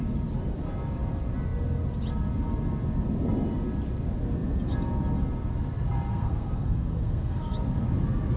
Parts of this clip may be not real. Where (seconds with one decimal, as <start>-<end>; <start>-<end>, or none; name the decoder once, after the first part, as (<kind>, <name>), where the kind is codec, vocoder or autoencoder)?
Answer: 6.1-7.5 (codec, SNAC)